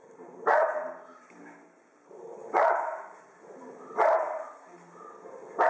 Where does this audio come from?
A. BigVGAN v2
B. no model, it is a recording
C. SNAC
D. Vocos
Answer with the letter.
A